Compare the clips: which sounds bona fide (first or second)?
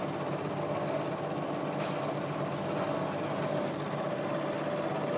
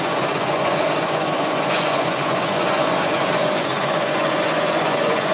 first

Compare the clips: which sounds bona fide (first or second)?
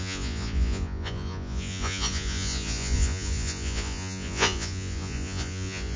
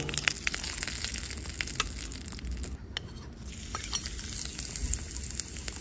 second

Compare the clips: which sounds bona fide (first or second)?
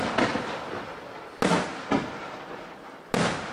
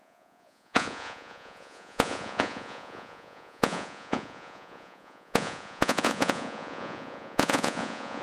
first